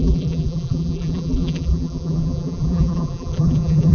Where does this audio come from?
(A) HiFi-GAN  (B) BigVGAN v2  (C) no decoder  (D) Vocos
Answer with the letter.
B